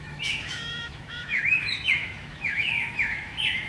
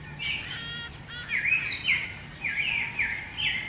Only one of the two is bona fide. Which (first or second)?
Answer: second